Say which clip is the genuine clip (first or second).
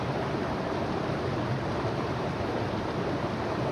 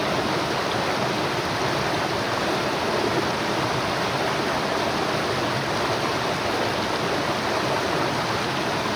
second